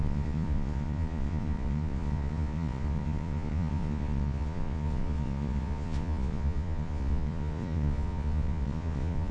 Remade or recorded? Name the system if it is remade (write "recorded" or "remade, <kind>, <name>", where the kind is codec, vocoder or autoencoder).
remade, vocoder, Vocos